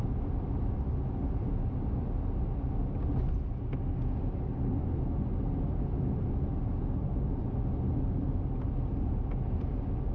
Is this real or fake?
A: real